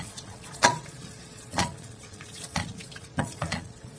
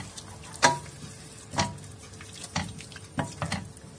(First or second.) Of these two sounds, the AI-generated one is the first